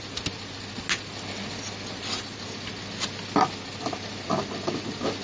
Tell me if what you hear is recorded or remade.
recorded